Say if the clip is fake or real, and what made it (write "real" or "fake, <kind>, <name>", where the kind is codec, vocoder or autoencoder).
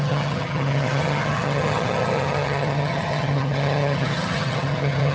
fake, vocoder, HiFi-GAN